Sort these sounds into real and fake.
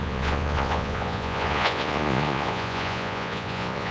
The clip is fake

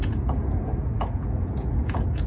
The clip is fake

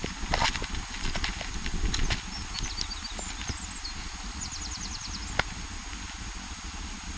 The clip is real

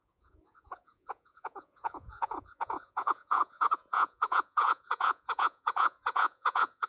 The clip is fake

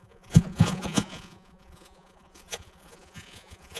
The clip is fake